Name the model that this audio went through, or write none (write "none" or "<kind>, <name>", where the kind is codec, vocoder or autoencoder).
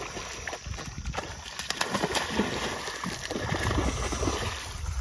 none